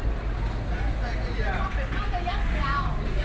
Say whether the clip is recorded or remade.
recorded